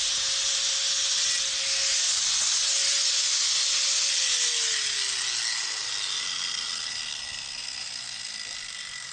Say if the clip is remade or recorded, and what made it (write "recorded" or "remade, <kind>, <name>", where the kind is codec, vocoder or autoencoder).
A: recorded